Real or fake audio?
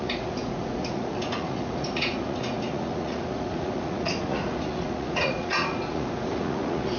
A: fake